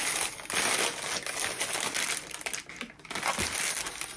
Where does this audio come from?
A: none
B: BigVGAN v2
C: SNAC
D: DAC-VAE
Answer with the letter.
A